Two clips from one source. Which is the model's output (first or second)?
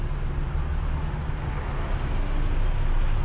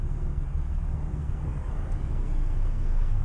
second